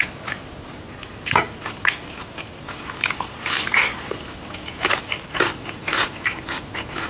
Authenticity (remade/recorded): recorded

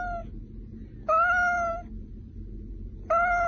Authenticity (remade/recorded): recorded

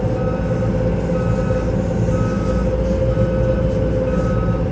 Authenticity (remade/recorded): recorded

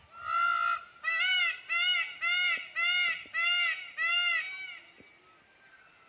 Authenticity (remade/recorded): recorded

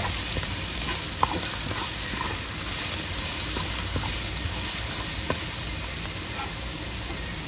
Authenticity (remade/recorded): recorded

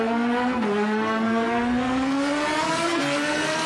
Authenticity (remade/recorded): remade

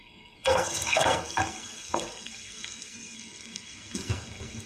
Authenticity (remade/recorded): remade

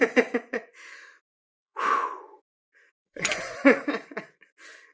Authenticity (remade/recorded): remade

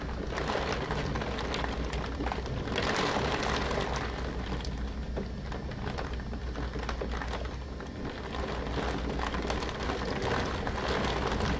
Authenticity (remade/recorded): recorded